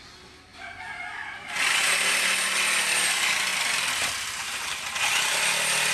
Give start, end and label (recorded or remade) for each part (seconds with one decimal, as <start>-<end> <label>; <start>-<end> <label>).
0.0-0.5 recorded; 0.5-1.5 remade; 1.5-3.5 recorded; 3.5-4.8 remade; 4.8-5.9 recorded